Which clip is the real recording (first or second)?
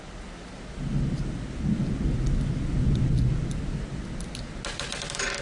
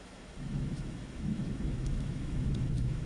first